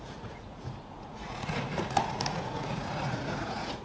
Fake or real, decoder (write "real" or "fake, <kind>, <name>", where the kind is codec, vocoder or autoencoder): fake, vocoder, Vocos